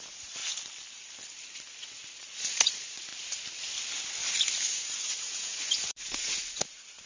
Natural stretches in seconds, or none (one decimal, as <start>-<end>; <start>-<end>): 0.4-1.8; 3.1-4.7